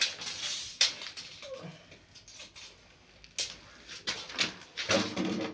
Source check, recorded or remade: recorded